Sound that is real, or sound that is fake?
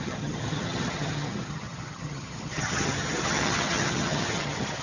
fake